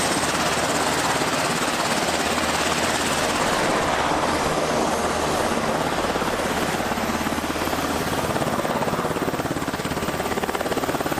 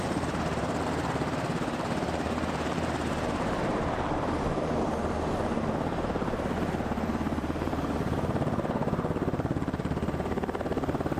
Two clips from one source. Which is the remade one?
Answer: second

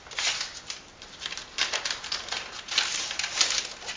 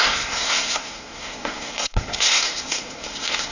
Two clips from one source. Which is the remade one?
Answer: second